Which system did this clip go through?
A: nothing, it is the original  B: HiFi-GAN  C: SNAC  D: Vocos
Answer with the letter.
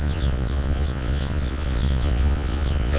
D